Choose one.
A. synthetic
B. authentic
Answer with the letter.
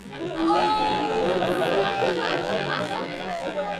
A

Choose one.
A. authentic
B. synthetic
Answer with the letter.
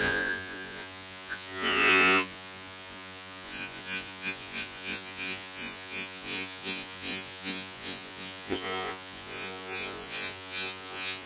B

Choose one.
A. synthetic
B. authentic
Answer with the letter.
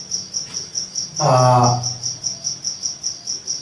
B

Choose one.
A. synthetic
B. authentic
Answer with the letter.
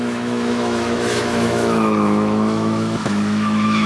A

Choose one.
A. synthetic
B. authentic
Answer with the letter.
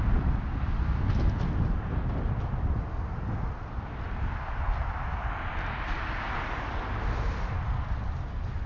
B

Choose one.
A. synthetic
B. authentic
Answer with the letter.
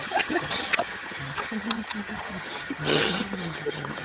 A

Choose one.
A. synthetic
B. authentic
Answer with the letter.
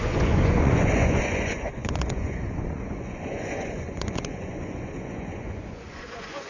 A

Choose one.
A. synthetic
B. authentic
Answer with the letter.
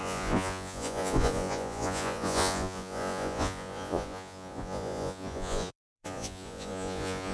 A